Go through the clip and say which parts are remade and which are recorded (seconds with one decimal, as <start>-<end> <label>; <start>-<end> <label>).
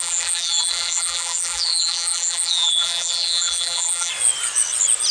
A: 0.0-4.1 remade; 4.1-5.1 recorded